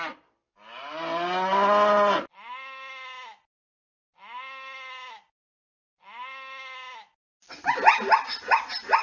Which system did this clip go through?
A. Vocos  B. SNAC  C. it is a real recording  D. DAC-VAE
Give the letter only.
C